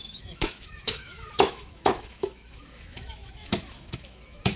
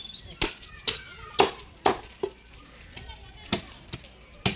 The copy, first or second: first